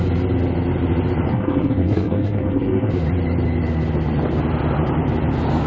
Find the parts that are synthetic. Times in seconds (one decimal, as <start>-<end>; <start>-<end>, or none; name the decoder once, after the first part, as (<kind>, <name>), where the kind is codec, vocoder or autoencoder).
1.3-2.9 (codec, SNAC)